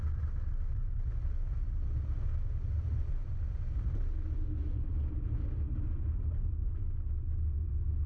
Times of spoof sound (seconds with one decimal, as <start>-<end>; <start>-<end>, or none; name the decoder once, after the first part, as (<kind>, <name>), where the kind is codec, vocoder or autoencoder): none